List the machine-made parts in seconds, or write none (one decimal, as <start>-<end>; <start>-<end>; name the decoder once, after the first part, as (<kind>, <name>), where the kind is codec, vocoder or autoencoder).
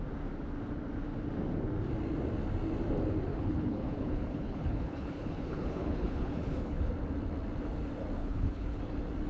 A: 3.3-6.9 (codec, HILCodec); 8.2-8.8